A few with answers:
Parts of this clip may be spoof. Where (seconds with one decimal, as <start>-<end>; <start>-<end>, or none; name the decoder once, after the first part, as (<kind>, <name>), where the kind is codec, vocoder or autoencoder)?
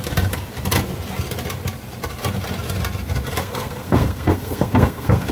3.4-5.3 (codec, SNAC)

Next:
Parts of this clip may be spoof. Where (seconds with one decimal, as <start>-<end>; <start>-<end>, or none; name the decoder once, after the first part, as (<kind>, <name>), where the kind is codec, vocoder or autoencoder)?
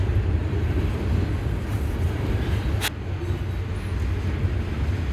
0.4-1.0 (vocoder, BigVGAN v2); 1.7-2.7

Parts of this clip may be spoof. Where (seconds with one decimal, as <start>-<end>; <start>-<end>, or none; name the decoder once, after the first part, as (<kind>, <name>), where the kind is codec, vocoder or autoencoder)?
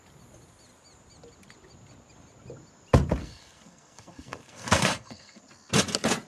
3.2-5.4 (codec, SNAC)